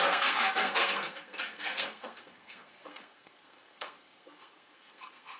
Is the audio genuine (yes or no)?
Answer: no